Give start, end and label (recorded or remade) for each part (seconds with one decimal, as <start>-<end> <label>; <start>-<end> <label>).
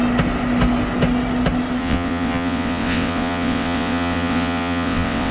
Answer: 0.0-1.8 recorded; 1.8-5.3 remade